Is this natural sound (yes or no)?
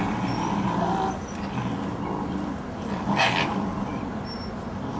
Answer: yes